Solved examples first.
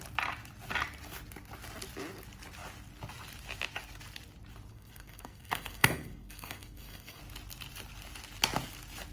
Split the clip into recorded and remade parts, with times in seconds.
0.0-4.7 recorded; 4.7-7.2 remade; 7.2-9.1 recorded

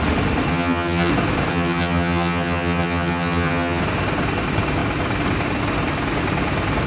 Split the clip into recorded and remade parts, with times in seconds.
0.0-0.5 recorded; 0.5-1.1 remade; 1.1-1.5 recorded; 1.5-3.8 remade; 3.8-6.9 recorded

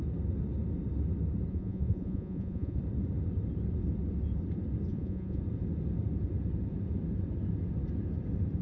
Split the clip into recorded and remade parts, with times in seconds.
0.0-1.5 recorded; 1.5-2.8 remade; 2.8-4.9 recorded; 4.9-5.4 remade; 5.4-8.6 recorded

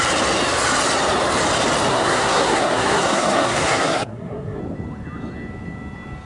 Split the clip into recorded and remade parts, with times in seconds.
0.0-1.9 recorded; 1.9-4.6 remade; 4.6-6.3 recorded

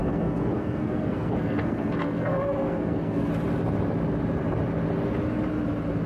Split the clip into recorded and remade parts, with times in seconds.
0.0-3.3 remade; 3.3-6.1 recorded

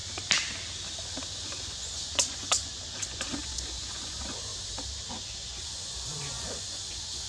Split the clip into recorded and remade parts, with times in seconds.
0.0-1.3 recorded; 1.3-4.5 remade; 4.5-5.1 recorded; 5.1-7.3 remade

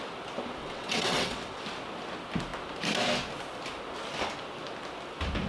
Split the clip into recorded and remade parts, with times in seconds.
0.0-0.6 recorded; 0.6-1.6 remade; 1.6-5.5 recorded